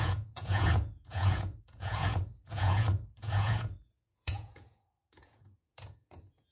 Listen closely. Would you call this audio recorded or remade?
remade